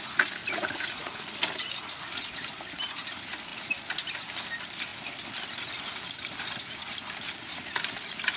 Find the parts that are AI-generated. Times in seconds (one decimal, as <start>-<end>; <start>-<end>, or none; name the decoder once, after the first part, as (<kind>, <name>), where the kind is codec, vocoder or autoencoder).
0.4-1.2 (vocoder, Vocos)

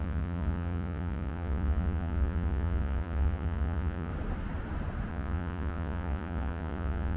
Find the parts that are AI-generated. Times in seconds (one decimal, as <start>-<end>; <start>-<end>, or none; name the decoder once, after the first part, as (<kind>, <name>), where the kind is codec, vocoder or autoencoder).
0.0-4.1 (vocoder, Vocos); 5.1-7.2

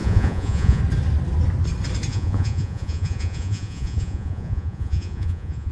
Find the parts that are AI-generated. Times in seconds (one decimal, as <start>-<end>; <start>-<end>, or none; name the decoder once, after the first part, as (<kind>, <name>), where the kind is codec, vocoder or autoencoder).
0.0-0.8 (vocoder, Vocos); 2.1-5.7

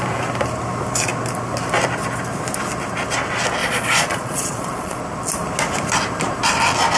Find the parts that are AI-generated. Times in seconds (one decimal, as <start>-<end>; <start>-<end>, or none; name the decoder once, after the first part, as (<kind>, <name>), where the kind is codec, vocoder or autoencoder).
3.6-5.0 (vocoder, Vocos)

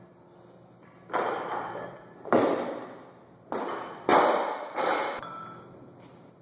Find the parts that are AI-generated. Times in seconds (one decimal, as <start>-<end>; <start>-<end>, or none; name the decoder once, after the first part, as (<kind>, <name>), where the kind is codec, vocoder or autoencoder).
none

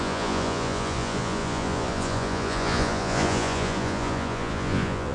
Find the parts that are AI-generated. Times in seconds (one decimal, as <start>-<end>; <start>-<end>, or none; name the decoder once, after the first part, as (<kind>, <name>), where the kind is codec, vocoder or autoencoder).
0.0-5.1 (vocoder, Vocos)